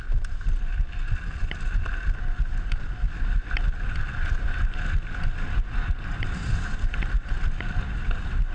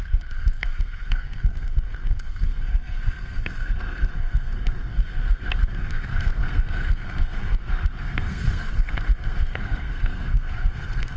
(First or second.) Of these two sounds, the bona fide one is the first